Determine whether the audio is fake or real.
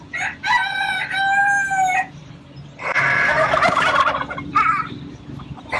fake